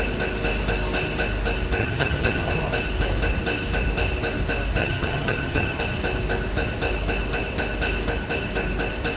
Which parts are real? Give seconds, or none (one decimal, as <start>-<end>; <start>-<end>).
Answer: 0.0-1.8; 2.5-4.8; 5.8-9.2